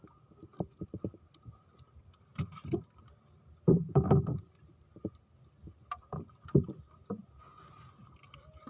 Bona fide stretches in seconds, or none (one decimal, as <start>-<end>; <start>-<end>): 0.0-8.7